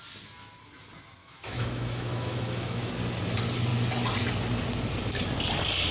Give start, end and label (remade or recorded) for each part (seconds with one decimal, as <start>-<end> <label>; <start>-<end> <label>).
0.0-1.2 recorded; 1.2-2.9 remade; 2.9-5.9 recorded